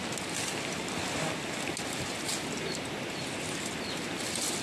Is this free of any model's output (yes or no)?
yes